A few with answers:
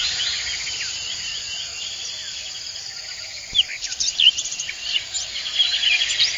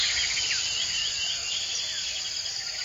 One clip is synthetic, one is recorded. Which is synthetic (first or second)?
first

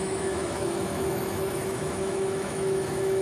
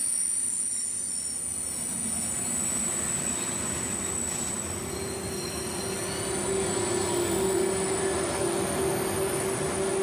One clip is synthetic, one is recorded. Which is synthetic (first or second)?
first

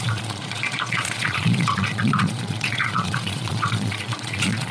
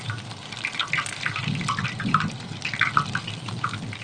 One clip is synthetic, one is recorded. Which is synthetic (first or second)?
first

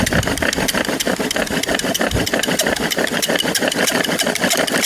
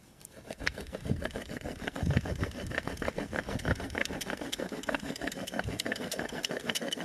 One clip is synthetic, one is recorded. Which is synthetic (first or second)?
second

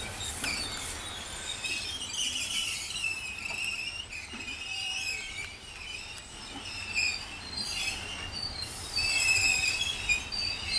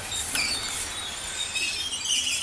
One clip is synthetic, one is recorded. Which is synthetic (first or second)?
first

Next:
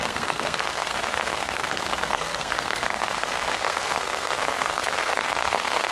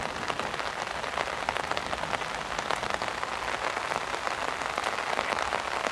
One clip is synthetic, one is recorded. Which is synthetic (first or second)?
first